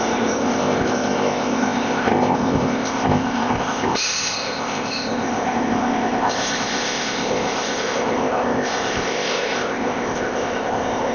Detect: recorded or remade remade